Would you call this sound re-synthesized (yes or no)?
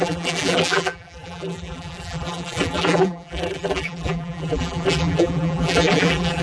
yes